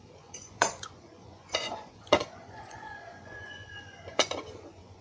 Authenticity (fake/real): fake